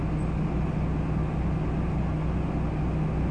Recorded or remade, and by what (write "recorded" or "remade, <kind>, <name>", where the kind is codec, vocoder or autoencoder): recorded